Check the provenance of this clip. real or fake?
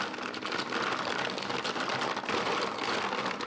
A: fake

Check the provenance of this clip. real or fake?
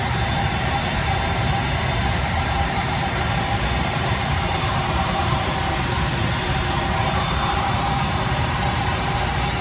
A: fake